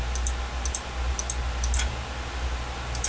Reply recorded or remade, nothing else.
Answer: recorded